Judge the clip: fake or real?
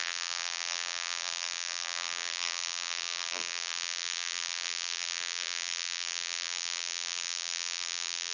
fake